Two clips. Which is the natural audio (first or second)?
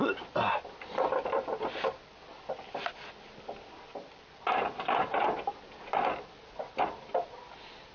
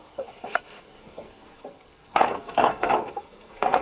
first